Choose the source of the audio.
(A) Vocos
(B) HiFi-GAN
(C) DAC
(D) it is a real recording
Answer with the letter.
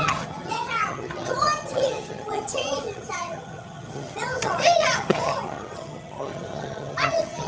B